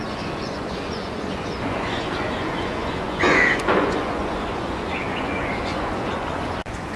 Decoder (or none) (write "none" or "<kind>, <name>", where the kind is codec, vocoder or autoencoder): vocoder, Vocos